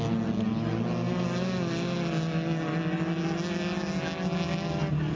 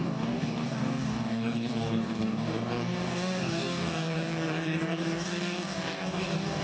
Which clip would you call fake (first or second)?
second